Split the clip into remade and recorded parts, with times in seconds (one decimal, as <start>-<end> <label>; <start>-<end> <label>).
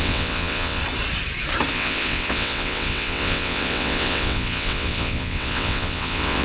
0.0-0.8 remade; 0.8-1.7 recorded; 1.7-6.4 remade